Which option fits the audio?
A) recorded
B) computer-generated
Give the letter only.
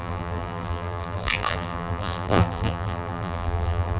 B